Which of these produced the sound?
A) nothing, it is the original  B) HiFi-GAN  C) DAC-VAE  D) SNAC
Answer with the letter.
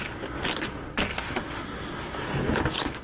A